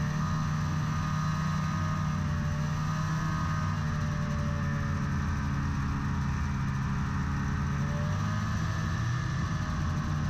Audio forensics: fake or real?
real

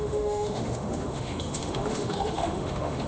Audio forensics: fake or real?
fake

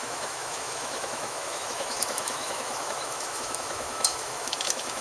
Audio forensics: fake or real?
fake